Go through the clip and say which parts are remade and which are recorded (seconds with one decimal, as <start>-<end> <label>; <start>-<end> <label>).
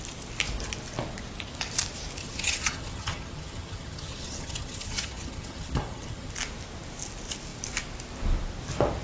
0.0-2.2 recorded; 2.2-6.3 remade; 6.3-9.0 recorded